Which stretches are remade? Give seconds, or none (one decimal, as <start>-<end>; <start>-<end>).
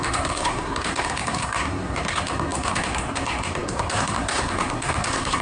0.0-5.4